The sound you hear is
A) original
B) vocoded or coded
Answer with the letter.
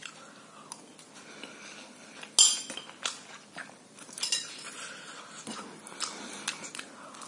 A